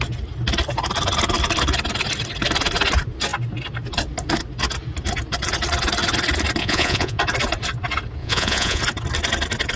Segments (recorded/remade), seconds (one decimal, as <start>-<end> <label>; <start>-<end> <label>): 0.0-6.6 recorded; 6.6-7.2 remade; 7.2-8.2 recorded; 8.2-8.8 remade; 8.8-9.8 recorded